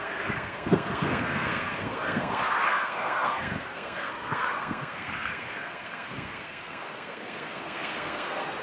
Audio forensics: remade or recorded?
remade